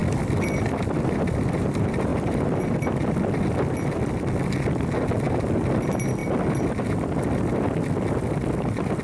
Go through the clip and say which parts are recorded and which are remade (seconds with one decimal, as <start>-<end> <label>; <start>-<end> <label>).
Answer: 0.0-1.6 remade; 1.6-2.1 recorded; 2.1-2.9 remade; 2.9-9.0 recorded